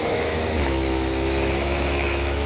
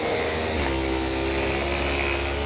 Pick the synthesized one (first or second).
first